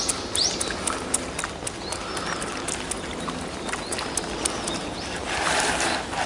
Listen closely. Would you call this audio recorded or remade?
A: recorded